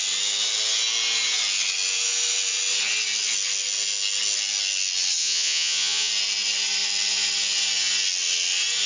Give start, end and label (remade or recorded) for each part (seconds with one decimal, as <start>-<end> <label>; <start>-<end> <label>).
0.0-5.2 recorded; 5.2-6.1 remade; 6.1-8.9 recorded